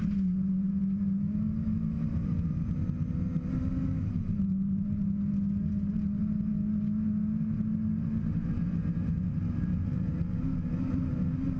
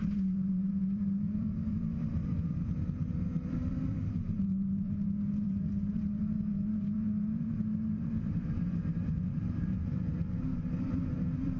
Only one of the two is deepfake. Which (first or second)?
second